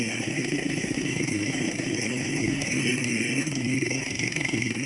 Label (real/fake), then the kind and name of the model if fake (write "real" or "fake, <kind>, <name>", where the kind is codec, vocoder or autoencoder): fake, codec, SNAC